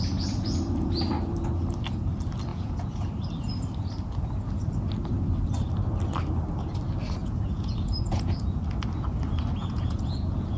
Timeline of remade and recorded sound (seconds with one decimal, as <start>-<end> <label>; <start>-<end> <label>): 0.0-2.5 recorded; 2.5-3.1 remade; 3.1-7.2 recorded; 7.2-8.6 remade; 8.6-9.6 recorded; 9.6-10.6 remade